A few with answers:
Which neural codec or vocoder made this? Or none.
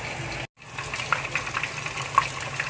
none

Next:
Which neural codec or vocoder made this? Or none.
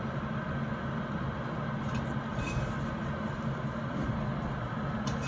none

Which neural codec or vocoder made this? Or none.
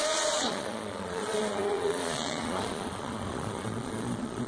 vocoder, Vocos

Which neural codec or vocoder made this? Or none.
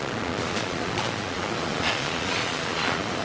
vocoder, Vocos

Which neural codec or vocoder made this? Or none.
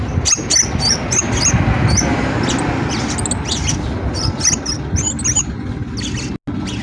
none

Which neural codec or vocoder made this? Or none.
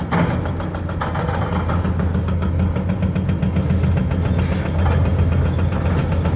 none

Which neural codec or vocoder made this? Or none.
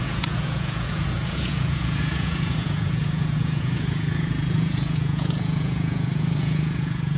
vocoder, Vocos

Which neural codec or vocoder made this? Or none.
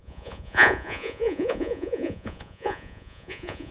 vocoder, Vocos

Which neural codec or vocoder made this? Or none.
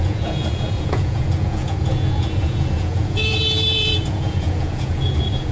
vocoder, Vocos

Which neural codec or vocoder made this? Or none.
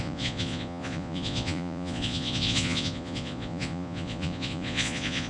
vocoder, Vocos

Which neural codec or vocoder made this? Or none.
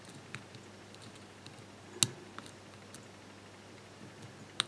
none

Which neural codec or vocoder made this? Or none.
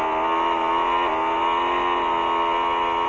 none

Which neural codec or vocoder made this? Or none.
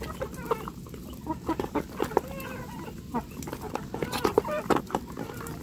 none